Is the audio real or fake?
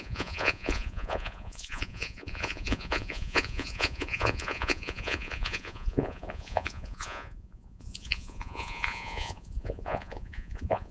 fake